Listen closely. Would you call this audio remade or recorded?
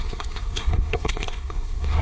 remade